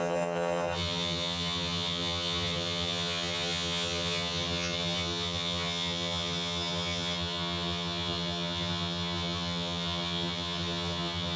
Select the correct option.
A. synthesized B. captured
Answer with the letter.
A